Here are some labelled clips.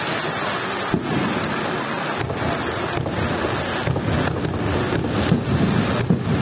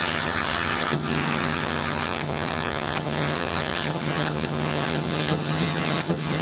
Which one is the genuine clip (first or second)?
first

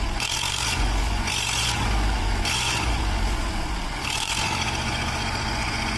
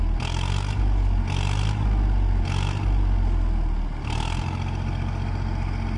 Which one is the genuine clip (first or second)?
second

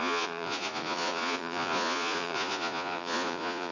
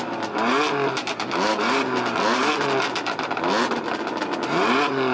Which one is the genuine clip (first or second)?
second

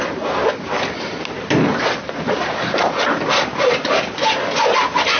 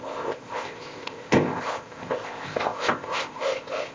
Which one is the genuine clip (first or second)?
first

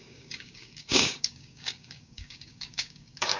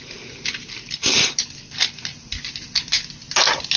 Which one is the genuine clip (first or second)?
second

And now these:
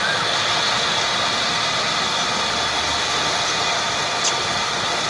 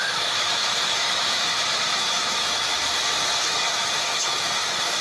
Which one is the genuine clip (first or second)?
first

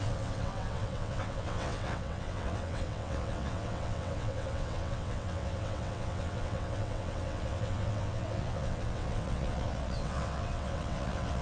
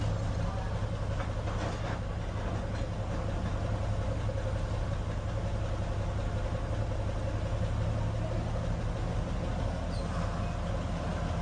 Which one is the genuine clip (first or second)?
second